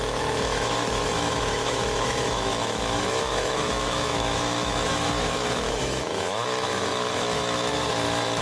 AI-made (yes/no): yes